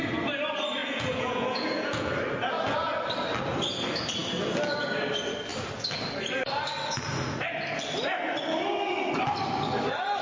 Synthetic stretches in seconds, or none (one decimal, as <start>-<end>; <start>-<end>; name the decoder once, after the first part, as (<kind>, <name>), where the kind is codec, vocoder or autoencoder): 0.8-2.1 (vocoder, Vocos)